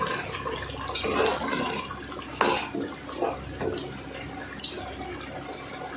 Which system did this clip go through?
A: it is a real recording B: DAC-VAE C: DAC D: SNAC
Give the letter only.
A